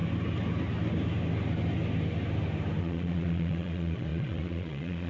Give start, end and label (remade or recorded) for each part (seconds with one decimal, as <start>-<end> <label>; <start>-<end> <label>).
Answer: 0.0-2.8 recorded; 2.8-5.1 remade